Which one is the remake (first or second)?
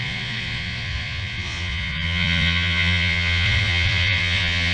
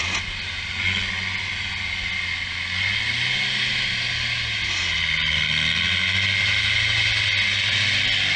first